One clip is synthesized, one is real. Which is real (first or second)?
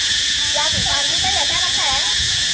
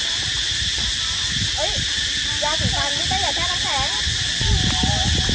second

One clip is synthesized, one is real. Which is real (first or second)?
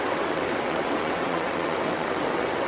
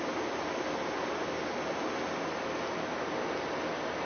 second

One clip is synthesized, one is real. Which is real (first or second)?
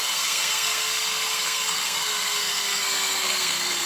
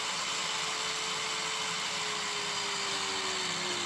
second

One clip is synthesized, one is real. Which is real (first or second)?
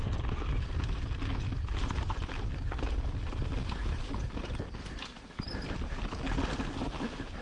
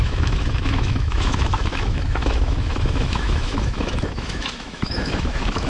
first